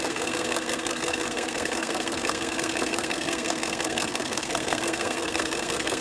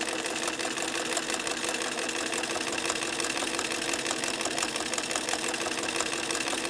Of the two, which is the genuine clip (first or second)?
second